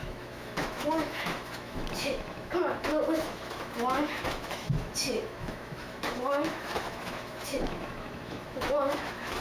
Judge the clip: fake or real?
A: fake